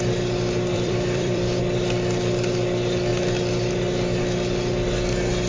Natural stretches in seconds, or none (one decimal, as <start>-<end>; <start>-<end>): 0.0-0.7; 1.6-5.5